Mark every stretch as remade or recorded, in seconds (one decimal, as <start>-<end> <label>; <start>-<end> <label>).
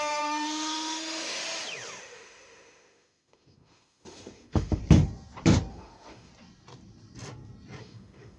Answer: 0.0-1.4 remade; 1.4-2.0 recorded; 2.0-4.8 remade; 4.8-5.7 recorded; 5.7-6.3 remade; 6.3-7.8 recorded; 7.8-8.4 remade